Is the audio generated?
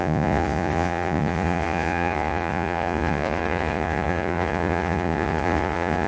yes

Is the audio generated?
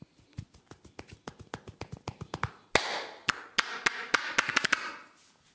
no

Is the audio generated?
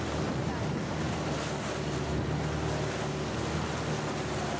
no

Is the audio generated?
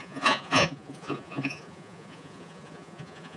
yes